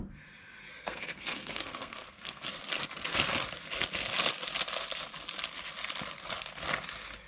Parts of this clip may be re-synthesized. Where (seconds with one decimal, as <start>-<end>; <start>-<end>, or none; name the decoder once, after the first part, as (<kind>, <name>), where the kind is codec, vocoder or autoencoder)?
0.8-2.6 (codec, SNAC)